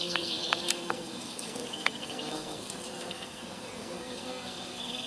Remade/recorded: remade